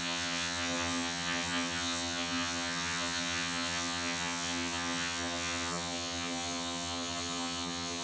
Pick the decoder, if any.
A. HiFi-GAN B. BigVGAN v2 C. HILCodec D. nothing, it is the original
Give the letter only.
A